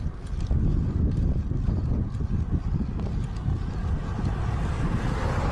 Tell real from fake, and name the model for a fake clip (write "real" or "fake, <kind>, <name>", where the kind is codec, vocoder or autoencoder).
real